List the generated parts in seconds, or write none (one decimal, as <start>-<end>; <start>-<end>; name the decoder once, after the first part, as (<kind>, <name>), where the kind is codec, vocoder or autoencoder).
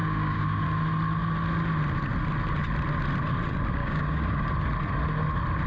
0.0-0.6 (codec, DAC); 3.8-4.5